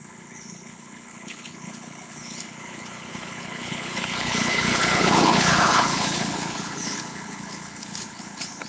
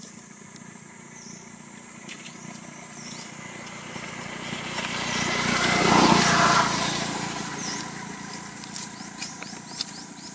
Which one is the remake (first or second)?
first